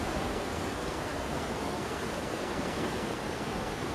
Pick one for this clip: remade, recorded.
remade